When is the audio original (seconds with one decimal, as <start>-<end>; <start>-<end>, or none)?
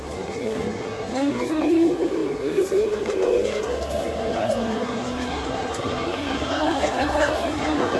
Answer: none